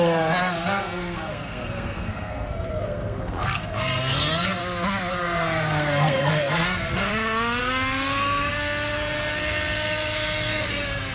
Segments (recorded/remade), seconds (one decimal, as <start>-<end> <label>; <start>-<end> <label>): 0.0-4.6 remade; 4.6-5.1 recorded; 5.1-7.1 remade; 7.1-7.6 recorded; 7.6-11.1 remade